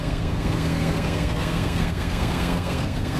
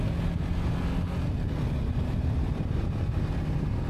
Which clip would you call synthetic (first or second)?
first